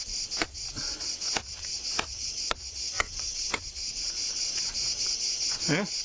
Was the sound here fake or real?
fake